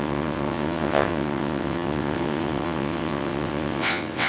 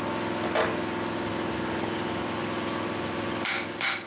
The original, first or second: second